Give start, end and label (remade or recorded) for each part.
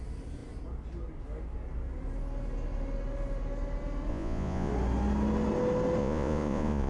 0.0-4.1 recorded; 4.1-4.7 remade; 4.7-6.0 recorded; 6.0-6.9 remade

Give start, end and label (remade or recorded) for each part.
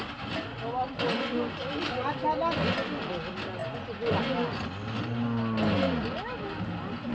0.0-3.6 recorded; 3.6-4.2 remade; 4.2-7.1 recorded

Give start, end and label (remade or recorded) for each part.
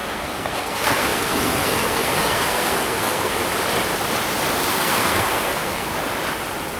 0.0-3.4 remade; 3.4-4.7 recorded; 4.7-5.9 remade; 5.9-6.8 recorded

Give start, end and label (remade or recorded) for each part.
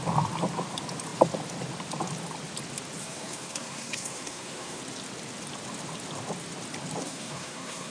0.0-3.0 recorded; 3.0-4.8 remade; 4.8-7.0 recorded; 7.0-7.9 remade